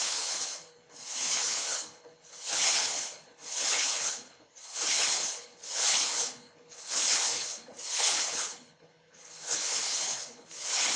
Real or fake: fake